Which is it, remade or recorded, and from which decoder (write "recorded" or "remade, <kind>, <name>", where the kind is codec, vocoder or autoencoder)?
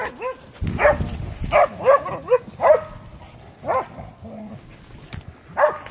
recorded